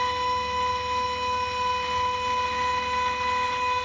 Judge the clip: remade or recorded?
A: recorded